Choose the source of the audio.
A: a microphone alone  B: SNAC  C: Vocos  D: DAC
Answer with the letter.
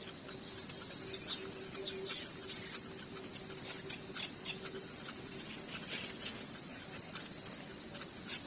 A